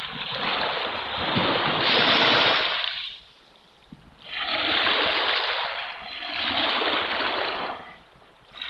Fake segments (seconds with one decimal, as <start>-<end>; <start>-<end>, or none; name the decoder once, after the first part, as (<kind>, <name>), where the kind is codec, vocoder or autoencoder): 4.5-8.7 (vocoder, BigVGAN v2)